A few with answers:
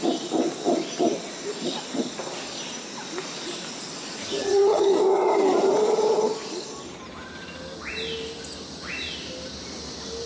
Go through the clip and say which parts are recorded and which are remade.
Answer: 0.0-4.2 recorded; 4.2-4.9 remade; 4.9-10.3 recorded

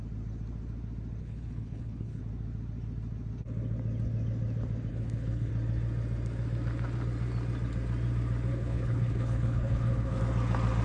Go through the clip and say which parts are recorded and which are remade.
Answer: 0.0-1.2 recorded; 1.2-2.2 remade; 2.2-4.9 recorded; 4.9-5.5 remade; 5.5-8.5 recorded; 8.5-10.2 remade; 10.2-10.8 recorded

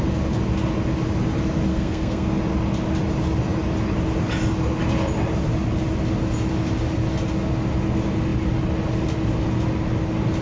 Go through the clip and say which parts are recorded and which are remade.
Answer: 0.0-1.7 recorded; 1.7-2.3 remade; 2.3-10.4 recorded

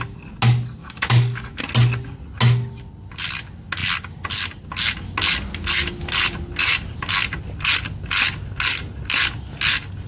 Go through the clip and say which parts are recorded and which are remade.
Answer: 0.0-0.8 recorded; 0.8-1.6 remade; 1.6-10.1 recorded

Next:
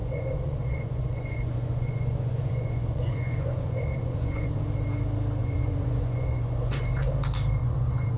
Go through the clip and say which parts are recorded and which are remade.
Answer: 0.0-4.5 remade; 4.5-5.4 recorded; 5.4-7.1 remade; 7.1-7.6 recorded; 7.6-8.2 remade

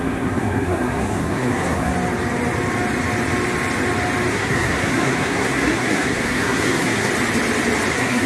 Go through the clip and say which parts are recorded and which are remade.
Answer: 0.0-1.9 remade; 1.9-4.3 recorded; 4.3-7.1 remade; 7.1-7.9 recorded; 7.9-8.3 remade

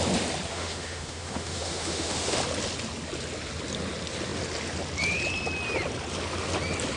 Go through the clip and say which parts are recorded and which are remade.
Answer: 0.0-0.5 recorded; 0.5-2.4 remade; 2.4-7.0 recorded